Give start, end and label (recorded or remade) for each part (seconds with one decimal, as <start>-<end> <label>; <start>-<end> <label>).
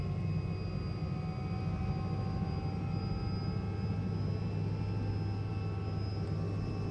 0.0-6.9 recorded